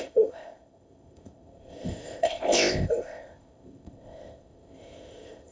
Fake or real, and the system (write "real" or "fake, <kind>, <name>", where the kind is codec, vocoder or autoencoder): fake, codec, ZipCodec